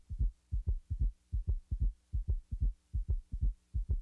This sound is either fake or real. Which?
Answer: real